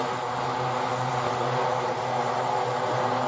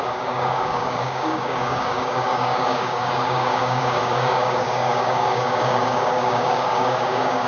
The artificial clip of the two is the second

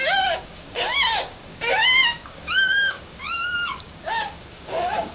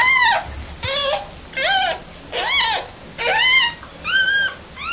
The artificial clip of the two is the first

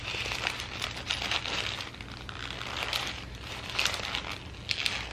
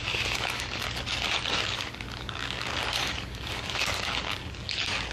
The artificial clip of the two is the second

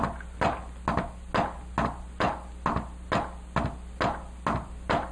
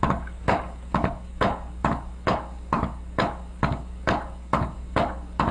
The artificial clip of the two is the second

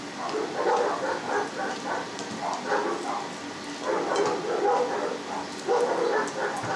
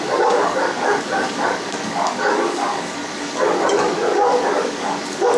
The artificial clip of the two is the second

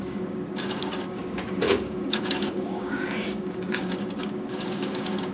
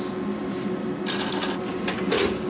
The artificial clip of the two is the first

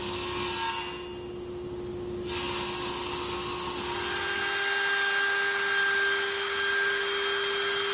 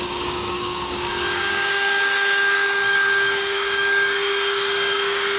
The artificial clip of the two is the second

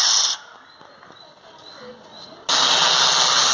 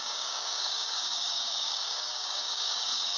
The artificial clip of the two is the second